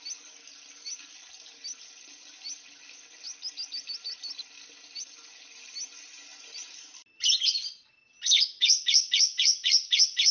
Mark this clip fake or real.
real